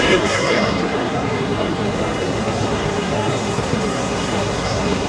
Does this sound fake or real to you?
fake